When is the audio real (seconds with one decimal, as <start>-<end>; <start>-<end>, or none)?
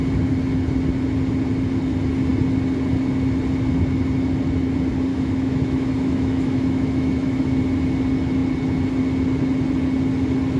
0.0-5.1; 7.6-10.6